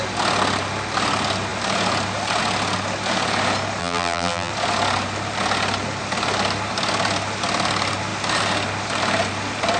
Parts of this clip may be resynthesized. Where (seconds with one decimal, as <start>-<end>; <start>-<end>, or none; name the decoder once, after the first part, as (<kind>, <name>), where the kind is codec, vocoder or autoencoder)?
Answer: 3.8-4.5 (vocoder, BigVGAN v2)